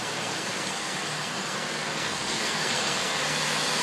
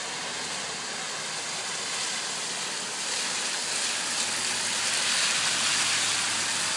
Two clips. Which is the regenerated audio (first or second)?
first